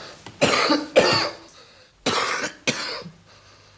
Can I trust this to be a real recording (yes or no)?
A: yes